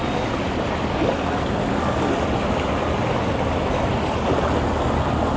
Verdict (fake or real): real